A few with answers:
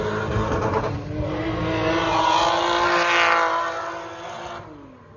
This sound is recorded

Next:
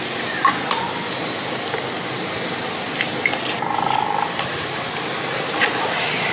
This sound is recorded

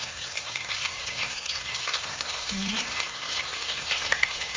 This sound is remade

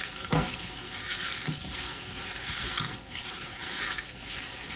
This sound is remade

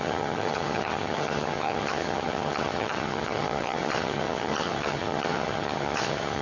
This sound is remade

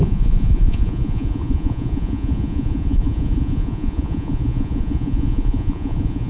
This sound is remade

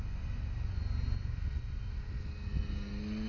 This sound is recorded